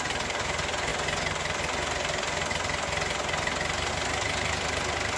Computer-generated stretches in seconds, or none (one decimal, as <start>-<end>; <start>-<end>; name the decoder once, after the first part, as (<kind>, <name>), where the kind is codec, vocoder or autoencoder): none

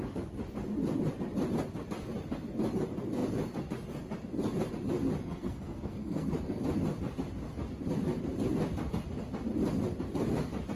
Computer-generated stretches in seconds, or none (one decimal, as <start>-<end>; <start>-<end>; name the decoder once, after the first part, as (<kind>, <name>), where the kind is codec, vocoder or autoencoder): 5.2-6.6 (codec, SNAC)

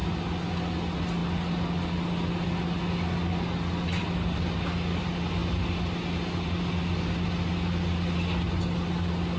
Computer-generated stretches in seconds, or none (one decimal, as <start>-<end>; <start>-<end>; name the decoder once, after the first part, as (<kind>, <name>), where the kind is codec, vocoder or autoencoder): none